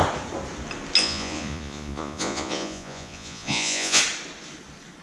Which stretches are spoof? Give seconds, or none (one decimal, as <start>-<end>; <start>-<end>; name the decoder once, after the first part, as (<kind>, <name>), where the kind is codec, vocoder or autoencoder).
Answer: 1.0-4.0 (vocoder, Vocos)